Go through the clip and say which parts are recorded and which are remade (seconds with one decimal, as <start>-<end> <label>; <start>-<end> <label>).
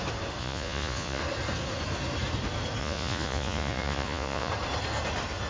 0.0-0.4 recorded; 0.4-1.2 remade; 1.2-2.8 recorded; 2.8-4.5 remade; 4.5-5.5 recorded